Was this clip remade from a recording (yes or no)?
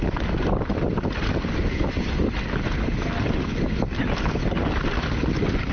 no